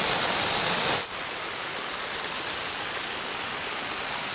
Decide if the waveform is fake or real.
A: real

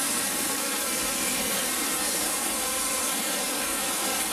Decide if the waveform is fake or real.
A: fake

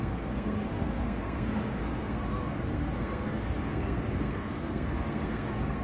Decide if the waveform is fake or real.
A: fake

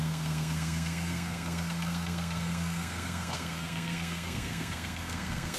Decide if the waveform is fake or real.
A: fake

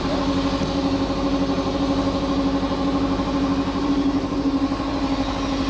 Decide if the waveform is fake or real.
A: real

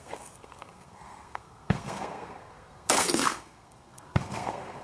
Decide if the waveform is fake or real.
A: fake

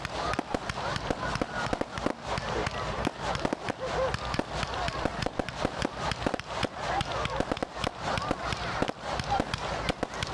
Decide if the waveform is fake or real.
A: real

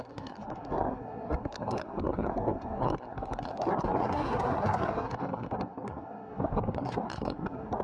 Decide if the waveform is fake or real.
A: fake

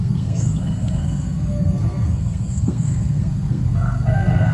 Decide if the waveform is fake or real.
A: fake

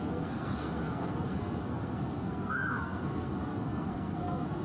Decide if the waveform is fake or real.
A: fake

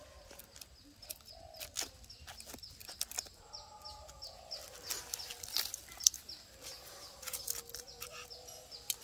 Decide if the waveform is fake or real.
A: real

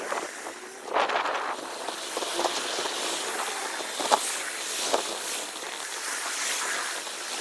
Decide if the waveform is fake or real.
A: real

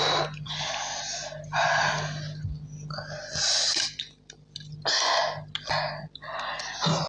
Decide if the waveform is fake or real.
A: real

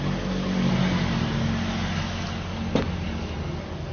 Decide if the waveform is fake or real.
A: real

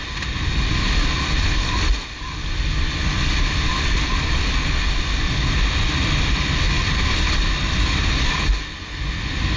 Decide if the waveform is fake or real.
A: real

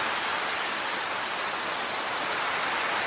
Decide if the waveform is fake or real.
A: real